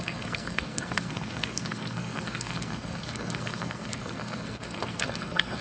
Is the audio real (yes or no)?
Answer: no